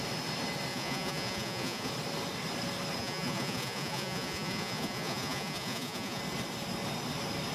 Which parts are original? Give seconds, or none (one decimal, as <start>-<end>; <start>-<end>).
0.0-0.7; 1.9-3.0; 6.2-7.5